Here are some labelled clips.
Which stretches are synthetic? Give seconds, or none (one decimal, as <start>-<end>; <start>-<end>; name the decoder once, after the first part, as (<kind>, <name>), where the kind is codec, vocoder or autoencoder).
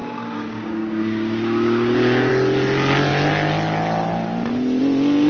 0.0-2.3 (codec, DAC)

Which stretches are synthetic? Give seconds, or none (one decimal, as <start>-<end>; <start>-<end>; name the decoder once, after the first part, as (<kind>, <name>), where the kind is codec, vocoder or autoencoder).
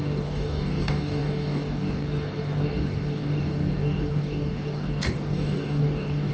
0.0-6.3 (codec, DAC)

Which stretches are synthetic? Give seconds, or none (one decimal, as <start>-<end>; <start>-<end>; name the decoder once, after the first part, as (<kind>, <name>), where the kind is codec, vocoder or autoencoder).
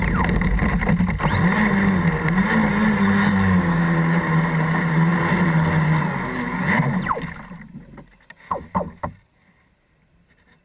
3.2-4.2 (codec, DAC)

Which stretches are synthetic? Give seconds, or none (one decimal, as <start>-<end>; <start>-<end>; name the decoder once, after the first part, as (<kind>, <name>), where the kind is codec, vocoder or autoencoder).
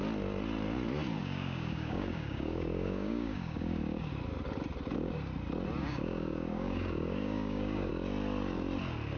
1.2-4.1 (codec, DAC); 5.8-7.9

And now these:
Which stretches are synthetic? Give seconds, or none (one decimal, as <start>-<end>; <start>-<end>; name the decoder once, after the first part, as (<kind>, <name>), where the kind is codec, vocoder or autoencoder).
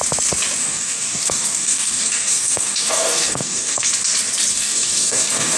0.6-3.9 (codec, DAC); 4.5-5.6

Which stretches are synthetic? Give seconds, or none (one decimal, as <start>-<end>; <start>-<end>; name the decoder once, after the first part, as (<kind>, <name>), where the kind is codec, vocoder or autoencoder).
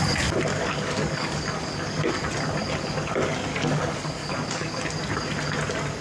0.5-2.1 (codec, DAC); 3.5-4.8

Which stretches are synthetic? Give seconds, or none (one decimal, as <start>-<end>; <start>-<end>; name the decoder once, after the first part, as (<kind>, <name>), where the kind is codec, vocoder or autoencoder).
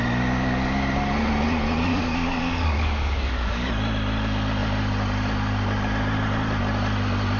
1.9-3.7 (codec, DAC)